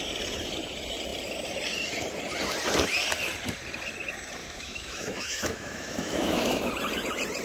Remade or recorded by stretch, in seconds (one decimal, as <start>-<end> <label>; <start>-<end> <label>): 0.0-4.4 recorded; 4.4-6.7 remade; 6.7-7.4 recorded